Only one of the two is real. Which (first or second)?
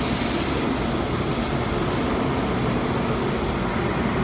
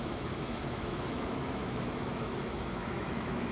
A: first